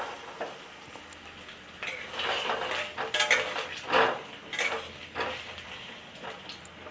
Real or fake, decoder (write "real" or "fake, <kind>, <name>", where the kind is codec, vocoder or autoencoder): real